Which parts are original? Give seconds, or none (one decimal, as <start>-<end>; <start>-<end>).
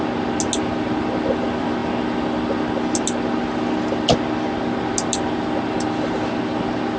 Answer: 0.0-7.0